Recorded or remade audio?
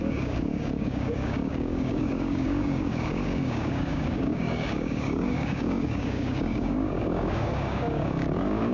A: remade